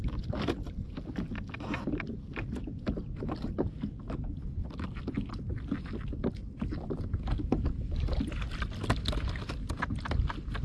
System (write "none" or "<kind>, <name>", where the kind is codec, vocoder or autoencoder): none